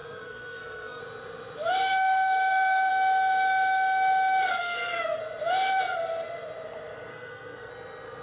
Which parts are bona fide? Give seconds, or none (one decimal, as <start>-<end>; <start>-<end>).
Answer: 1.0-1.8; 2.9-4.5; 5.2-7.1; 7.7-8.2